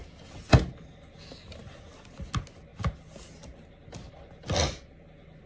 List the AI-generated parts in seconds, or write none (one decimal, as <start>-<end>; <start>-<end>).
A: none